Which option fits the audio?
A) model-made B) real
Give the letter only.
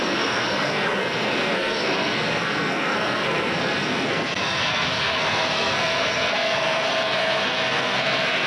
A